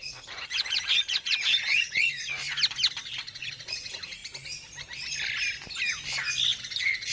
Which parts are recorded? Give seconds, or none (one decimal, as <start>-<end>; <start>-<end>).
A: 2.1-3.2; 4.2-6.6